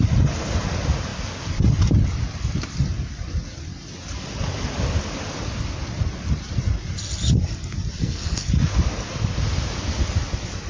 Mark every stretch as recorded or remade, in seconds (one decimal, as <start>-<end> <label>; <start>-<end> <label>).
0.0-8.0 recorded; 8.0-8.5 remade; 8.5-10.7 recorded

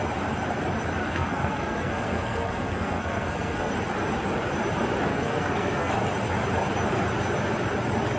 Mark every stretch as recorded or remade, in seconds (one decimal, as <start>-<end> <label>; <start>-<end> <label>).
0.0-1.0 recorded; 1.0-3.7 remade; 3.7-5.1 recorded; 5.1-5.9 remade; 5.9-8.2 recorded

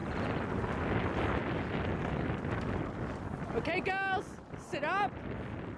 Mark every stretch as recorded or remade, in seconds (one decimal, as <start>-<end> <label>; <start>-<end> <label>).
0.0-5.8 recorded

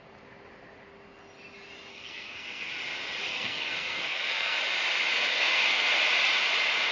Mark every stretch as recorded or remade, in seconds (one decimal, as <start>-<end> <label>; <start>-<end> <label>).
0.0-1.9 recorded; 1.9-2.7 remade; 2.7-3.3 recorded; 3.3-4.6 remade; 4.6-5.3 recorded; 5.3-6.0 remade; 6.0-6.9 recorded

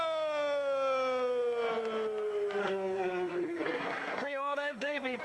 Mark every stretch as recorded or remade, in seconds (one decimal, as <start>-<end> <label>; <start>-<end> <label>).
0.0-2.6 recorded; 2.6-5.2 remade

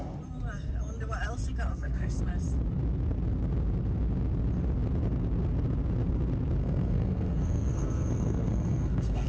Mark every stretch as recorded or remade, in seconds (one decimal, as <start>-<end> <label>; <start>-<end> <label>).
0.0-1.7 recorded; 1.7-2.2 remade; 2.2-6.6 recorded; 6.6-9.3 remade

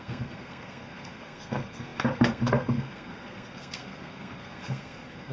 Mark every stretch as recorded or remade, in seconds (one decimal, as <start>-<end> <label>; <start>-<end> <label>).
0.0-5.3 remade